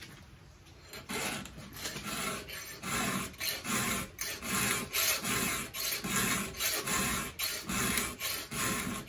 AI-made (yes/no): no